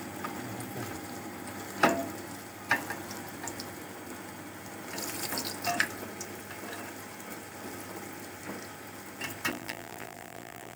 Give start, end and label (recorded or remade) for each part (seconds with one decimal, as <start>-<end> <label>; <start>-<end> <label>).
0.0-9.5 recorded; 9.5-10.8 remade

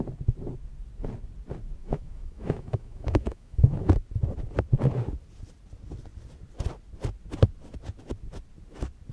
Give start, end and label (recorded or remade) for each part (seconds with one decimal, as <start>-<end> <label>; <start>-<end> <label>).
0.0-1.8 recorded; 1.8-3.9 remade; 3.9-9.1 recorded